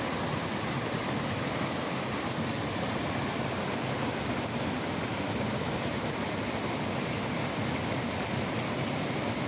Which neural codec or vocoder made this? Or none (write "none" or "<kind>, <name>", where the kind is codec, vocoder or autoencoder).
vocoder, BigVGAN v2